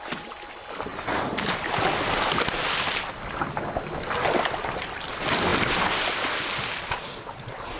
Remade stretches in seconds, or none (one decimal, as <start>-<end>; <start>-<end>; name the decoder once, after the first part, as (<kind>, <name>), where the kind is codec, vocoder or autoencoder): none